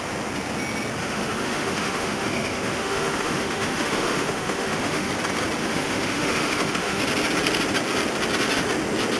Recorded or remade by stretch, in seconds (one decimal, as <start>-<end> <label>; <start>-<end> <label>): 0.0-1.0 recorded; 1.0-5.1 remade; 5.1-5.6 recorded; 5.6-7.0 remade; 7.0-9.2 recorded